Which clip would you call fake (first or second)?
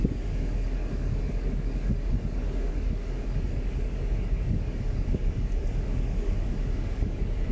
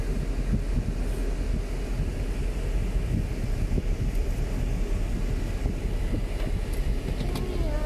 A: first